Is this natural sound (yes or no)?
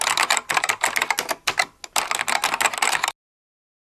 yes